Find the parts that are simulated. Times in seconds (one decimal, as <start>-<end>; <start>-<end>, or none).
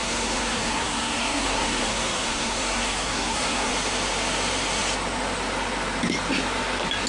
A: 0.0-3.7